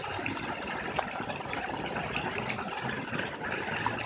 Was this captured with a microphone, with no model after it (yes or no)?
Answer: yes